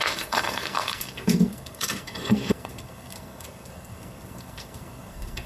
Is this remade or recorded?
remade